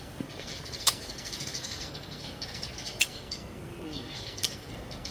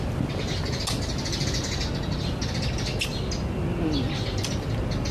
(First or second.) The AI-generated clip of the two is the first